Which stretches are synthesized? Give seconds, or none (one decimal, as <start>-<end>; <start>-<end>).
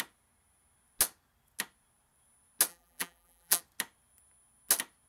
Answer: 2.7-3.6